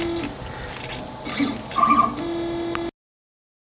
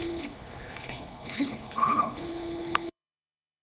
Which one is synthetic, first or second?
second